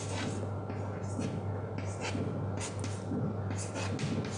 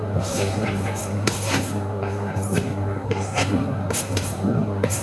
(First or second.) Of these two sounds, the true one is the first